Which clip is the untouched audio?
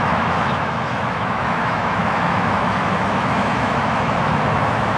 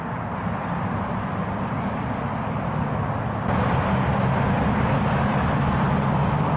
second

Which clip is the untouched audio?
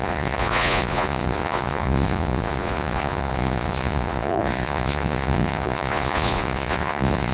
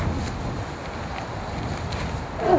second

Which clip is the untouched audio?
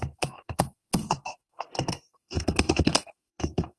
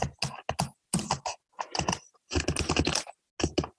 second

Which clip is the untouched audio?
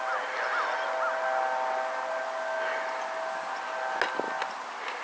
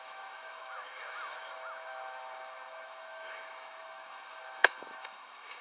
first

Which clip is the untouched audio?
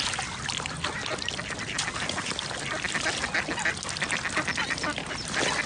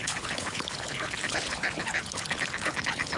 first